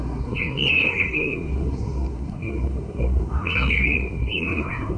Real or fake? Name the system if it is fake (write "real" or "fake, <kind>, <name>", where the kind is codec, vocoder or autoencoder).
fake, codec, SNAC